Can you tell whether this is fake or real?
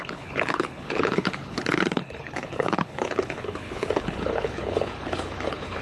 fake